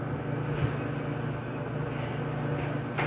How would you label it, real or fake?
real